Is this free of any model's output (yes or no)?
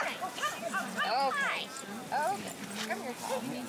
yes